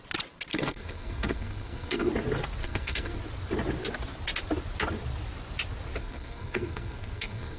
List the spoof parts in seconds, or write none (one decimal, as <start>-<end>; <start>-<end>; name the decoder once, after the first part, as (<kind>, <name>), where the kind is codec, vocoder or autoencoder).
0.5-2.1 (codec, SNAC); 2.6-3.2; 6.0-7.6